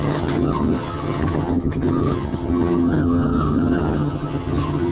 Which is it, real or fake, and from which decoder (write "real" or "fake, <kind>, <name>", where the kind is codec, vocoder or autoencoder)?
fake, vocoder, HiFi-GAN